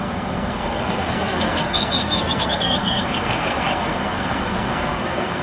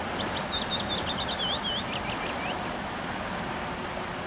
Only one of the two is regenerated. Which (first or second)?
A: first